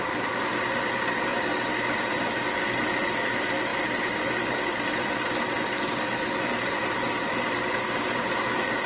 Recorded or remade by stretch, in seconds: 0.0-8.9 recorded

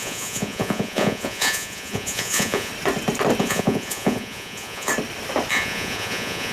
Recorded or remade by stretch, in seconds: 0.0-2.7 remade; 2.7-3.4 recorded; 3.4-4.9 remade; 4.9-5.5 recorded; 5.5-6.5 remade

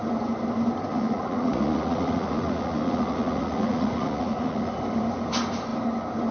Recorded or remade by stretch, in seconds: 0.0-0.9 recorded; 0.9-4.7 remade; 4.7-6.3 recorded

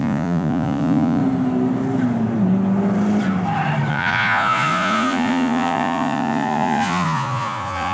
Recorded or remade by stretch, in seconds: 0.0-1.2 remade; 1.2-3.9 recorded; 3.9-7.9 remade

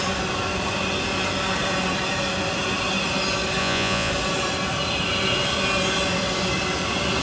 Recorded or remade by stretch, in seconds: 0.0-3.6 recorded; 3.6-4.1 remade; 4.1-7.2 recorded

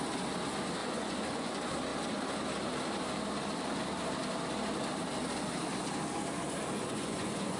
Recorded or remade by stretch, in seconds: 0.0-0.8 recorded; 0.8-1.5 remade; 1.5-6.8 recorded; 6.8-7.6 remade

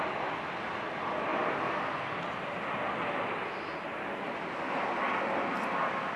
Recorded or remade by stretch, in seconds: 0.0-6.2 recorded

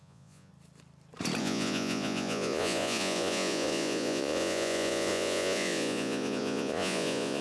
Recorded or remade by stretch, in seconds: 0.0-0.5 remade; 0.5-1.4 recorded; 1.4-7.4 remade